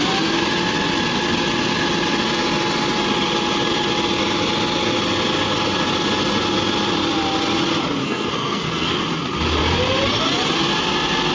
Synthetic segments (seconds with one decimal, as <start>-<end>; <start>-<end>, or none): 8.0-8.9